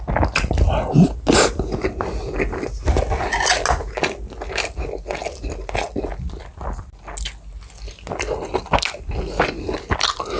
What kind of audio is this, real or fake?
real